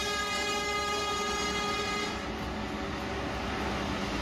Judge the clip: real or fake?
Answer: real